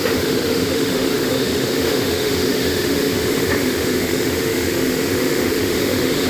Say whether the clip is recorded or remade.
remade